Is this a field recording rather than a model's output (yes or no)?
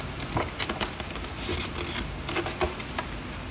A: yes